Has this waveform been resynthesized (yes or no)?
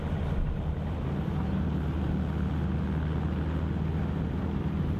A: no